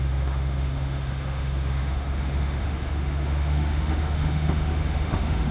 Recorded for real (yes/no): no